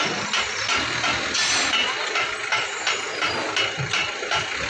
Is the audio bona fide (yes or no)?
yes